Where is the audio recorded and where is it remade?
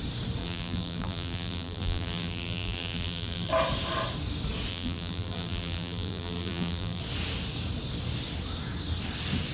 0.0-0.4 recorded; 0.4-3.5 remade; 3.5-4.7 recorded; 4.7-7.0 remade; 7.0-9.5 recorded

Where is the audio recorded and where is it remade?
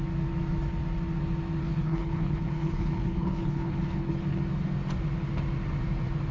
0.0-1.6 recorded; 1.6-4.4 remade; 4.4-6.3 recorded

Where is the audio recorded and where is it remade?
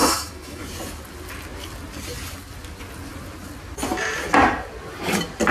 0.0-0.6 remade; 0.6-5.5 recorded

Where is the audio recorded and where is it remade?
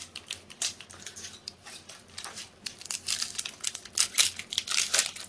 0.0-5.3 recorded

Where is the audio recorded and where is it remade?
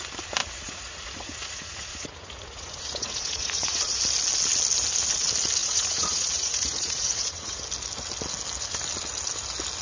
0.0-0.4 recorded; 0.4-4.0 remade; 4.0-5.6 recorded; 5.6-7.6 remade; 7.6-9.8 recorded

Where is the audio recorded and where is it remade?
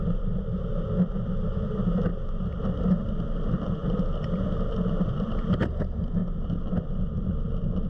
0.0-2.1 remade; 2.1-2.6 recorded; 2.6-6.2 remade; 6.2-6.7 recorded; 6.7-7.9 remade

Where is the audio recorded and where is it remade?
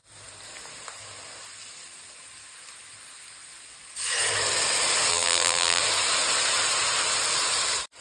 0.0-5.1 recorded; 5.1-5.8 remade; 5.8-8.0 recorded